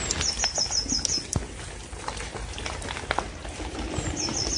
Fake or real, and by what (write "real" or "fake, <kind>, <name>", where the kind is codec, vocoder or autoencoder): real